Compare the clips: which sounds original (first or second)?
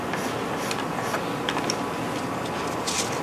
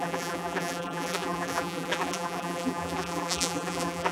first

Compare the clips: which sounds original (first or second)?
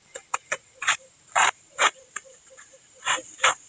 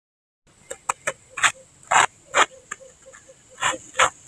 second